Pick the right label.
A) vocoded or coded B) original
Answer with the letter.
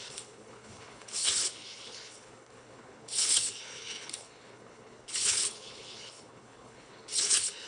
A